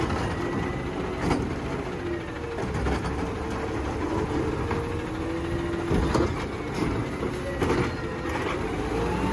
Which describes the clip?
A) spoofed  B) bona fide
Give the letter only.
B